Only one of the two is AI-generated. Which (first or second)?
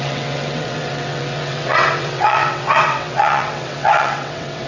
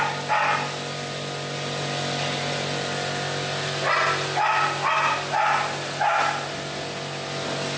first